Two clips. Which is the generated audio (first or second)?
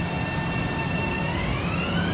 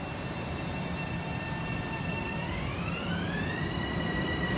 second